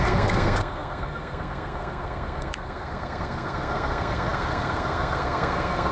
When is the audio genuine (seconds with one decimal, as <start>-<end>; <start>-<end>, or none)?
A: none